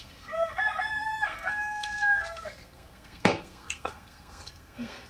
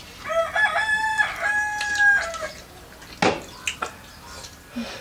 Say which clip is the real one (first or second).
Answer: second